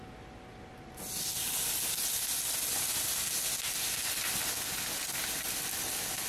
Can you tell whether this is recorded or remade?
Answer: recorded